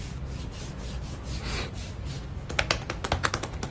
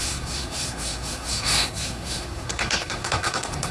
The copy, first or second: second